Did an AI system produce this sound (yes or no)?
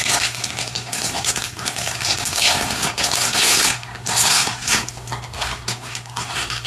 yes